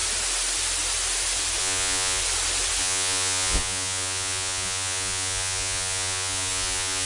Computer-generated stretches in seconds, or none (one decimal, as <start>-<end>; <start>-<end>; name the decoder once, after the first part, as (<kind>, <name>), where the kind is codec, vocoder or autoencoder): 1.6-2.2 (vocoder, Vocos); 2.8-7.1